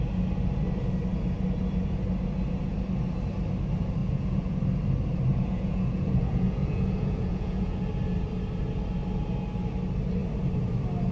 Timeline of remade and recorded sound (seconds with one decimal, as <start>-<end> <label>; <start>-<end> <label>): 0.0-4.0 recorded; 4.0-4.6 remade; 4.6-5.3 recorded; 5.3-7.8 remade; 7.8-11.1 recorded